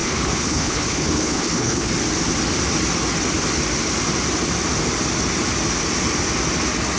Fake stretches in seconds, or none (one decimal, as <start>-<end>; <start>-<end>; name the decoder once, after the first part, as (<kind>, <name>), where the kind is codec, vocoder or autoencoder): 0.0-1.9 (codec, HILCodec)